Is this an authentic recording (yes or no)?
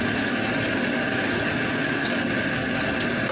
yes